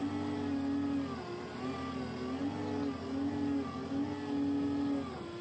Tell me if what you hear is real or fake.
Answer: real